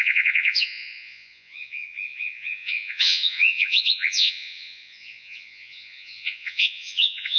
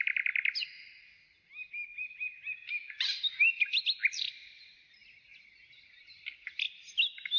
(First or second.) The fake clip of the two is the first